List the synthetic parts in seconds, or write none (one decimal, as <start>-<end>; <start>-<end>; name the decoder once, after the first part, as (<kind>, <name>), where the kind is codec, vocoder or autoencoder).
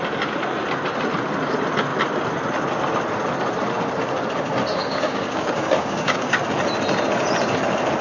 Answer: 4.7-6.4 (codec, DAC)